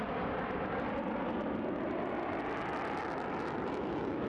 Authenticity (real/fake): real